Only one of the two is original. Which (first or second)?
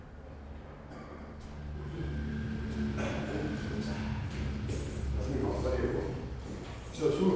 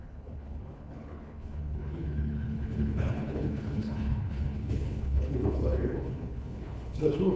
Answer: first